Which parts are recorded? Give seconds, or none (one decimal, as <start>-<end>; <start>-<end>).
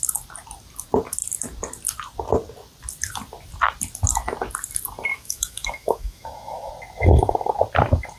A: 0.0-5.1; 6.7-8.2